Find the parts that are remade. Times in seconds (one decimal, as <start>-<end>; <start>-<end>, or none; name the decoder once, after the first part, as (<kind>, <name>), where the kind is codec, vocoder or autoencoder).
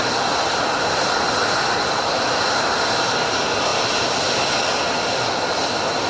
none